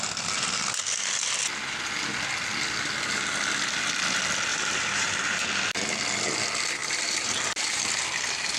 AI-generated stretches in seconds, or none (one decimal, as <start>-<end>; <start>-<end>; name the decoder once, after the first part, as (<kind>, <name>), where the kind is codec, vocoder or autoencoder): 4.5-5.4 (vocoder, BigVGAN v2); 6.8-7.8